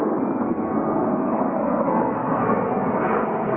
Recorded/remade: remade